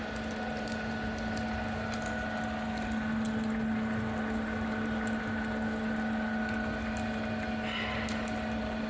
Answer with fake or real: real